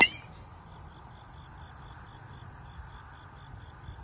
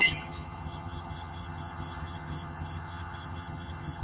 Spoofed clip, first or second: second